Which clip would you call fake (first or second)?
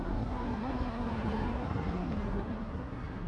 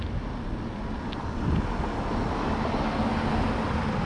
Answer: first